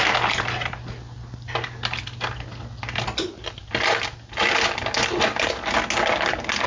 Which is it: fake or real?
real